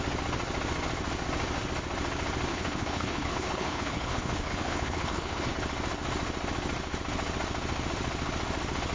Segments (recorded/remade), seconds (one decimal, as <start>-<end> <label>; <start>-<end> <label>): 0.0-2.5 recorded; 2.5-5.5 remade; 5.5-8.9 recorded